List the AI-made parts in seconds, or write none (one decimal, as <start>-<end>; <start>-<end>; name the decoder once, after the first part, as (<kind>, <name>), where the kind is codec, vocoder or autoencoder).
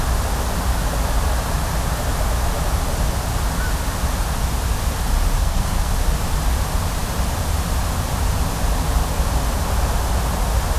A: 5.4-5.9 (codec, SNAC)